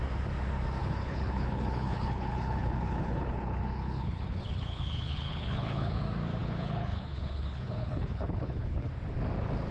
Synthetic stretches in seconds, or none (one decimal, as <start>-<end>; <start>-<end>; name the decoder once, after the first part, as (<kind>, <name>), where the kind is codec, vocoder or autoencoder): 0.8-6.0 (codec, HILCodec); 6.4-8.9